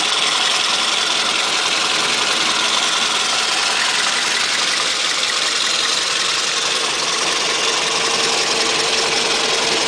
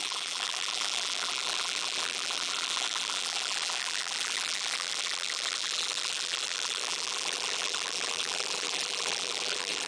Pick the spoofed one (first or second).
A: second